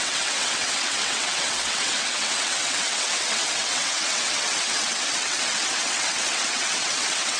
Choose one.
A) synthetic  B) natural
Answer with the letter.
A